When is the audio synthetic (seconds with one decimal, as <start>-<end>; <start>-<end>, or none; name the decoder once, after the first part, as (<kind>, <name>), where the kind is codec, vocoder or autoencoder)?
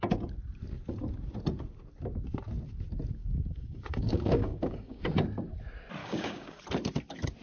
3.2-5.0 (codec, DAC); 6.0-6.6